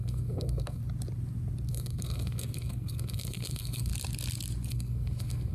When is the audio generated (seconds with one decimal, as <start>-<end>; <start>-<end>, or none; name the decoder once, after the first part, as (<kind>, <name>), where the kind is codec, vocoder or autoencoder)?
0.0-0.8 (codec, SNAC); 1.7-3.9; 4.7-5.5